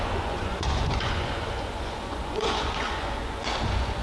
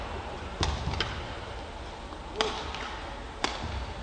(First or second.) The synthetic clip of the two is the first